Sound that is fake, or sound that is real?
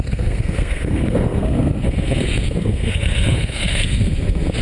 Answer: fake